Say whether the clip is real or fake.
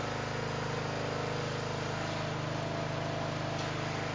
real